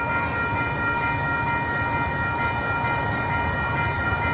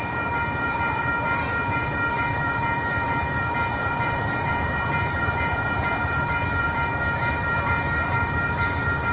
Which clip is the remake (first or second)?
second